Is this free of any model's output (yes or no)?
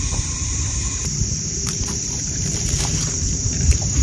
no